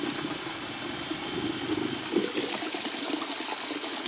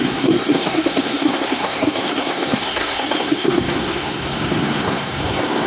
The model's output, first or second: second